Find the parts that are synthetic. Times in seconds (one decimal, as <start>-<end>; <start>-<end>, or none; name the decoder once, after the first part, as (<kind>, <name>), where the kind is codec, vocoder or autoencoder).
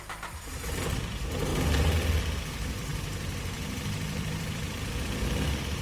0.0-5.8 (vocoder, BigVGAN v2)